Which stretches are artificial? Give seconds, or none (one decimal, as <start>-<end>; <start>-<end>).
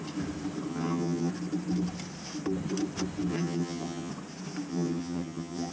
0.7-1.3; 3.3-4.1; 4.7-5.7